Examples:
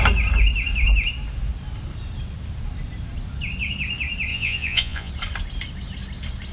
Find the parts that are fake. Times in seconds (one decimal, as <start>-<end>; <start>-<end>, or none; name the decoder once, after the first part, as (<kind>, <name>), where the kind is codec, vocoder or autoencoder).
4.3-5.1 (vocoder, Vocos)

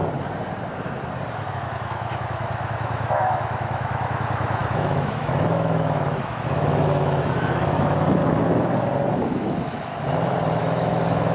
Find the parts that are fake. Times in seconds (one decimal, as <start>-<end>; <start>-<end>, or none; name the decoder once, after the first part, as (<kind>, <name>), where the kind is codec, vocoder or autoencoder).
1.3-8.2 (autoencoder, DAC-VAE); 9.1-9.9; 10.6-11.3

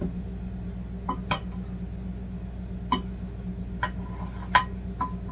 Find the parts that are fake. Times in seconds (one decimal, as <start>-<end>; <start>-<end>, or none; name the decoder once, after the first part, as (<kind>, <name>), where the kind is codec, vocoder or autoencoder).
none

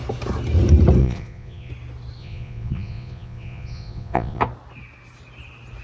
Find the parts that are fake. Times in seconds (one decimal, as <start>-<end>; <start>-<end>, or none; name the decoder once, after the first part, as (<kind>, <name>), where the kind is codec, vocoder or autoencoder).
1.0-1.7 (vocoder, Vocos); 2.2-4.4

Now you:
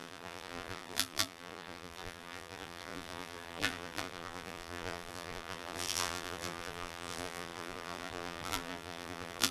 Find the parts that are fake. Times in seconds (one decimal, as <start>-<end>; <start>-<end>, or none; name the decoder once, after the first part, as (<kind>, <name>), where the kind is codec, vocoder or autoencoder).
0.0-9.5 (vocoder, BigVGAN v2)